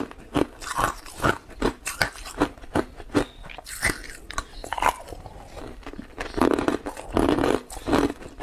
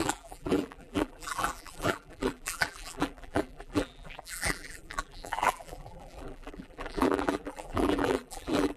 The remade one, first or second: second